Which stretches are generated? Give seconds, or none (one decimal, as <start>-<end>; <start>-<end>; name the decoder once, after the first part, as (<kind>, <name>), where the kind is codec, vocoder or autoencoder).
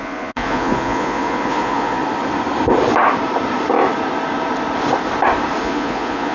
0.0-2.0 (vocoder, Vocos); 5.6-6.3